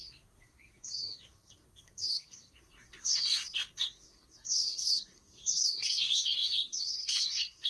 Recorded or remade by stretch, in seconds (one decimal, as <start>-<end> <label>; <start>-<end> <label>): 0.0-7.7 remade